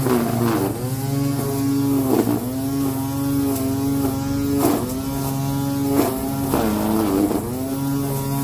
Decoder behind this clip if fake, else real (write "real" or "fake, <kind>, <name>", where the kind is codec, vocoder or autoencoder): real